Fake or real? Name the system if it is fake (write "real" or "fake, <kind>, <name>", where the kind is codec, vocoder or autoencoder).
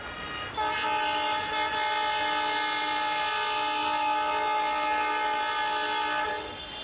real